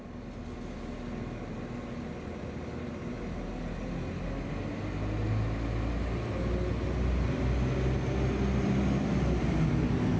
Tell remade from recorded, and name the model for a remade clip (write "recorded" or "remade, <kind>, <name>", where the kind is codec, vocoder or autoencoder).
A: recorded